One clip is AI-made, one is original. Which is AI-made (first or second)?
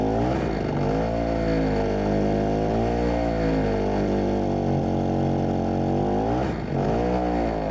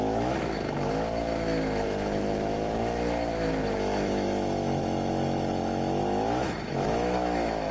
second